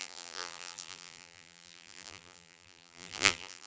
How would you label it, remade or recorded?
remade